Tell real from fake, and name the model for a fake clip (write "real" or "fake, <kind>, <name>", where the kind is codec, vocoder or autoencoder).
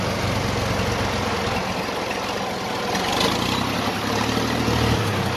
real